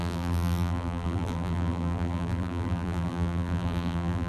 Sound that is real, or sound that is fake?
fake